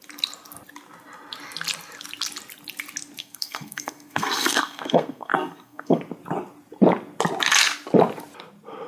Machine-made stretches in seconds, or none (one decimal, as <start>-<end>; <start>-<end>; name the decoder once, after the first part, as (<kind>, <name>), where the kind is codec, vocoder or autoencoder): 3.2-6.0 (codec, SNAC)